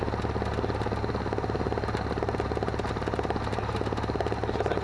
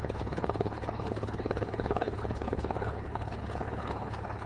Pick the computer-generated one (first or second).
second